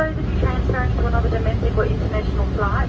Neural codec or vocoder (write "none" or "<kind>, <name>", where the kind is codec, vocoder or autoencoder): none